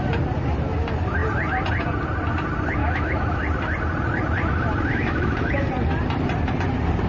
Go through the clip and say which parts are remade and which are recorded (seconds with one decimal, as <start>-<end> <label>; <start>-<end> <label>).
0.0-2.8 recorded; 2.8-3.4 remade; 3.4-4.9 recorded; 4.9-5.5 remade; 5.5-7.1 recorded